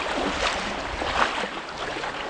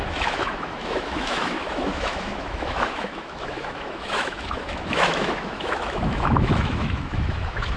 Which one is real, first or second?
first